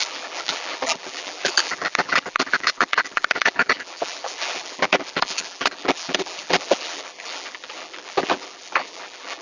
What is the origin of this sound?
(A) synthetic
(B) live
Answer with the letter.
A